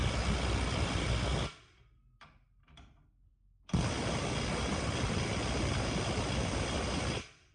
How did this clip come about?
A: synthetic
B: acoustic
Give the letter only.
B